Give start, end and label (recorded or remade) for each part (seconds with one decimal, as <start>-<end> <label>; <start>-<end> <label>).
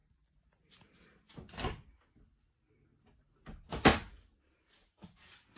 0.0-5.6 recorded